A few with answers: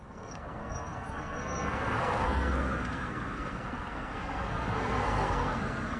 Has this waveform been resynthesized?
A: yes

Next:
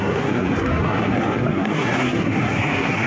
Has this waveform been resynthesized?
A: yes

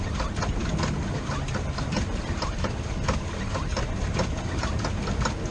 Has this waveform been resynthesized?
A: no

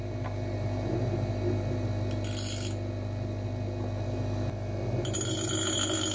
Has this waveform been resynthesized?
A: no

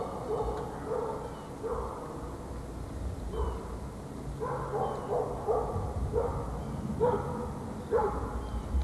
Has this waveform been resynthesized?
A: no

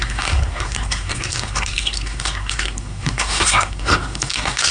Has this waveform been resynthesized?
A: yes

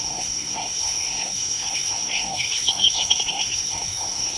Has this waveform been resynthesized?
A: yes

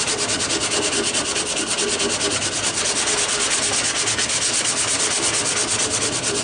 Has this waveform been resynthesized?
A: no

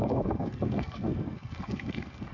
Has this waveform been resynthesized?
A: yes